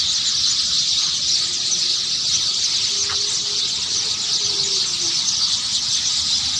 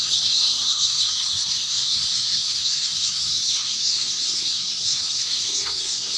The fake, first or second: second